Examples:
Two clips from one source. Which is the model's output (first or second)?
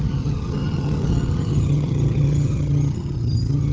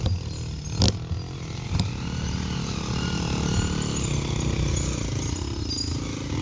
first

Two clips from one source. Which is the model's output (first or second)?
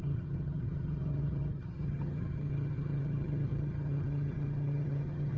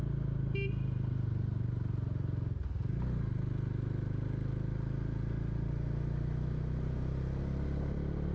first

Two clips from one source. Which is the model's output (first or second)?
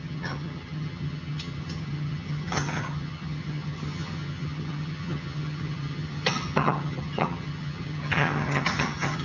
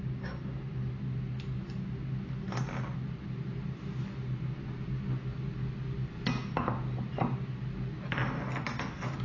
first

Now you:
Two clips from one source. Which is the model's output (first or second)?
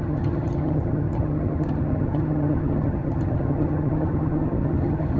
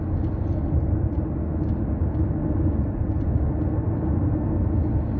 first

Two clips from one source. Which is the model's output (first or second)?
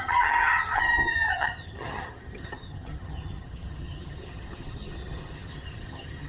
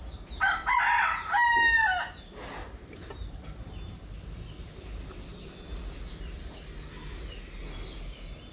first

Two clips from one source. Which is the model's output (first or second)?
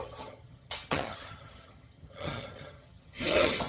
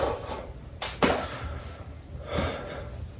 first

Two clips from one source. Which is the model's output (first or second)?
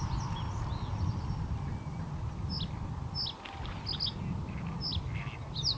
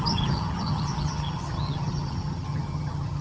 second